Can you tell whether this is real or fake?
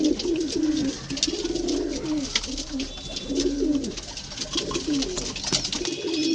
real